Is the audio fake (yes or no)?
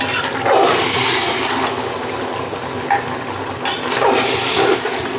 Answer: no